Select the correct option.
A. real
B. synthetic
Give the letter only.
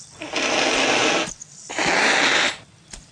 A